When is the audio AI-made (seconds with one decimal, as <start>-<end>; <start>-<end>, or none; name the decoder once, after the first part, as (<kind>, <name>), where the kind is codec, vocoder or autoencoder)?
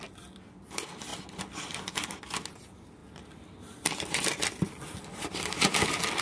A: none